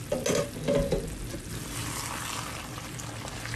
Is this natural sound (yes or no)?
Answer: yes